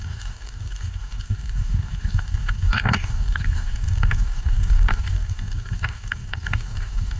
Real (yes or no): no